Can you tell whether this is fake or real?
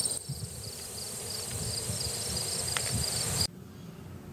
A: fake